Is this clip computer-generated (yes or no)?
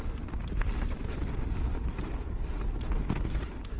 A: no